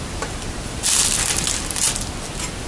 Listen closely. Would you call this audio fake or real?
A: real